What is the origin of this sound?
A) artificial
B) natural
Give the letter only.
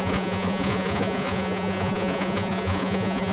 A